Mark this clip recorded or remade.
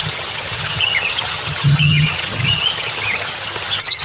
remade